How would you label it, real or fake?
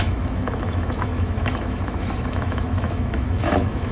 fake